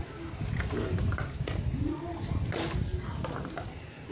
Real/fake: real